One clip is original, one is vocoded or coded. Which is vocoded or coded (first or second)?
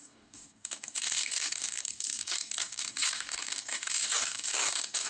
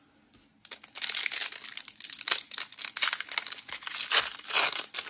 first